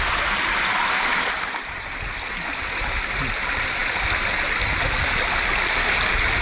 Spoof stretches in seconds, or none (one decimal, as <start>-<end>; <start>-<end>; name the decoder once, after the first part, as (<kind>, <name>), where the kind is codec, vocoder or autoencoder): none